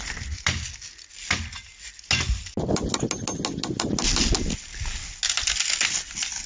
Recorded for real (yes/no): yes